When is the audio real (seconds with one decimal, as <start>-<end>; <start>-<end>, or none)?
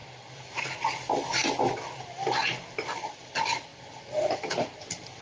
0.0-5.2